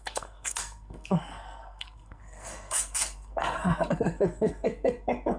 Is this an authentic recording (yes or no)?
no